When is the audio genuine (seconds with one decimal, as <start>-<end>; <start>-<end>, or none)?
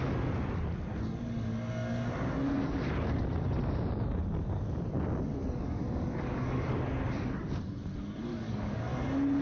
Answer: 0.0-5.3; 6.7-8.3; 8.8-9.4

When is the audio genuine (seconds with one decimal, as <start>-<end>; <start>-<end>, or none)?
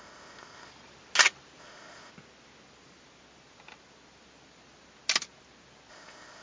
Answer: 0.7-1.6; 2.1-5.9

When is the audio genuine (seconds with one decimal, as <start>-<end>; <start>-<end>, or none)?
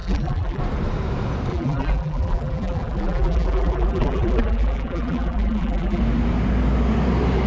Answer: 0.6-1.5; 6.0-7.5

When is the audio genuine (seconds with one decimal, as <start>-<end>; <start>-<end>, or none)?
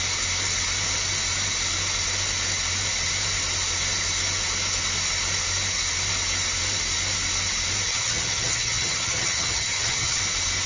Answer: 0.0-7.9; 10.2-10.7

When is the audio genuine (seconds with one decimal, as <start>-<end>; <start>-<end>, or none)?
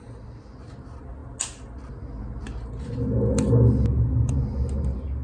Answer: 0.0-5.2